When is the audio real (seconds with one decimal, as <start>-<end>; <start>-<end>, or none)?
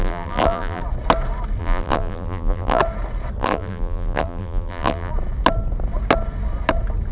0.8-1.6; 2.8-3.4; 5.1-7.1